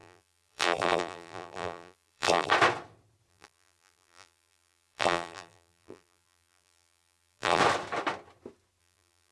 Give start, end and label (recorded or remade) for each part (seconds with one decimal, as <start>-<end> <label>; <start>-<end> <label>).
0.0-2.5 remade; 2.5-3.3 recorded; 3.3-7.6 remade; 7.6-8.8 recorded; 8.8-9.3 remade